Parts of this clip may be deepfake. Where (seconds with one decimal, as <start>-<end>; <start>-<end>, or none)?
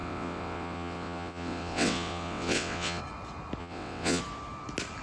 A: 0.0-3.0; 3.6-4.2